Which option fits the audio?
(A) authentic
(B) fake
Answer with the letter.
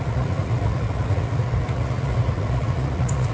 B